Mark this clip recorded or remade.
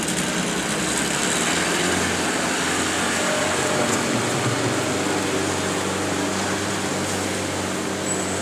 recorded